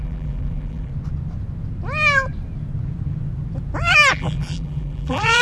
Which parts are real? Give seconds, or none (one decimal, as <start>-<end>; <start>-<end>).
0.9-4.1